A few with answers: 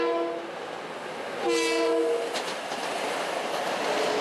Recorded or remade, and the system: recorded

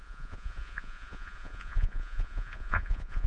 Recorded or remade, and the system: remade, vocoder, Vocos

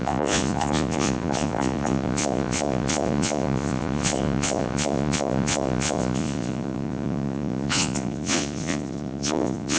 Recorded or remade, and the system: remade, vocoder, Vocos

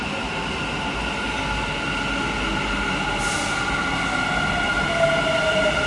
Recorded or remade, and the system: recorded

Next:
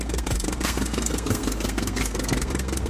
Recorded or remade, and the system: remade, codec, SNAC